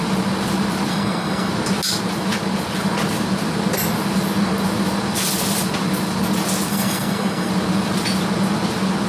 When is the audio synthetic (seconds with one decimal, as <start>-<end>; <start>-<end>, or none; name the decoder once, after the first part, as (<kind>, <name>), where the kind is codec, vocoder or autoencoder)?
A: 0.9-1.5 (codec, SNAC); 6.7-7.5